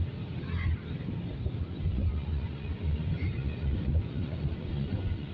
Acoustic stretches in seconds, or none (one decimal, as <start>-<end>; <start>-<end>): 0.0-1.9